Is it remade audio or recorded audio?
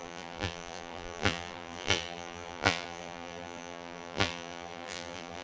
remade